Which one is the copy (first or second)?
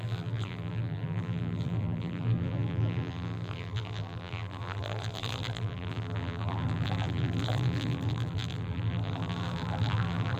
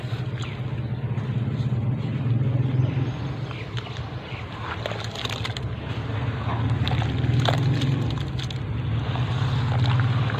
first